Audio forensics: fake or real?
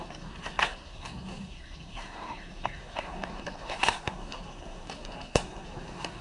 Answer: fake